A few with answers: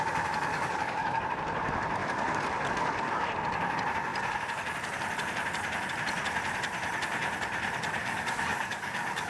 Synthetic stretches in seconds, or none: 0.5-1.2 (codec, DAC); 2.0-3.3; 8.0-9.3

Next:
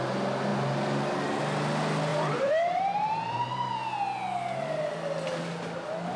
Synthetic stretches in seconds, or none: 2.1-3.7 (vocoder, BigVGAN v2)

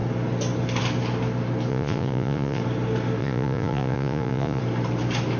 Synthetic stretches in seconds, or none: 1.7-2.6 (vocoder, Vocos); 3.2-4.6

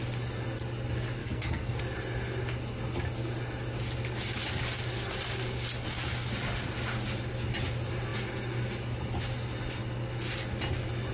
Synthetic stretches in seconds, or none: 1.2-1.8 (codec, SNAC)

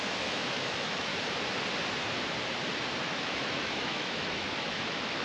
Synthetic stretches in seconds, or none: 0.0-1.1 (autoencoder, DAC-VAE); 3.0-5.2

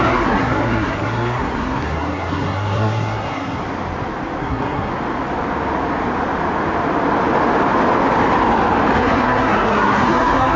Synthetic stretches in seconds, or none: 0.0-3.6 (codec, SNAC); 4.4-4.9; 8.9-10.6

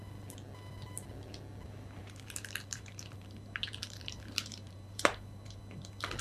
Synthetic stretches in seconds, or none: 2.0-5.6 (vocoder, BigVGAN v2)

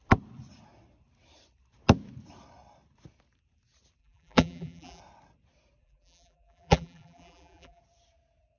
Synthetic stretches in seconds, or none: 4.0-5.0 (vocoder, BigVGAN v2); 5.8-7.8